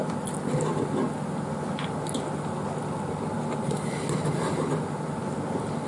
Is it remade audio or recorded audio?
recorded